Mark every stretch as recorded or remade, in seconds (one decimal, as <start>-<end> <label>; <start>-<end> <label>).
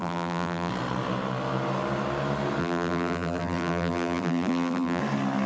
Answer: 0.0-0.7 remade; 0.7-2.6 recorded; 2.6-5.0 remade; 5.0-5.5 recorded